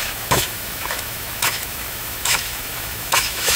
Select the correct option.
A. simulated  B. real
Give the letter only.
A